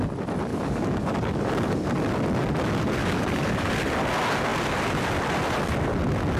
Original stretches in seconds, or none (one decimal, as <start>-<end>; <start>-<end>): 0.0-0.5; 1.9-3.0; 3.7-6.4